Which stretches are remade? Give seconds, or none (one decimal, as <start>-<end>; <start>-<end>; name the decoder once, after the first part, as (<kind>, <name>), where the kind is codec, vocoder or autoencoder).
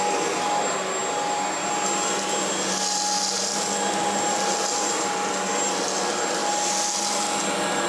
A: none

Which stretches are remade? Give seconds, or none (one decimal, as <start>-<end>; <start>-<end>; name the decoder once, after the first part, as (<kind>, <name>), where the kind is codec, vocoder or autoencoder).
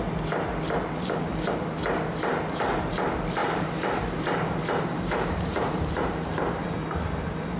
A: 3.4-6.8 (vocoder, BigVGAN v2)